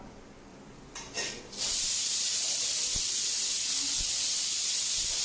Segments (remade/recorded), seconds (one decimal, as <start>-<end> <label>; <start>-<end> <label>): 0.0-0.5 recorded; 0.5-1.4 remade; 1.4-5.2 recorded